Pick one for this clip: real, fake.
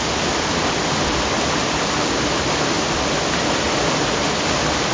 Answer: real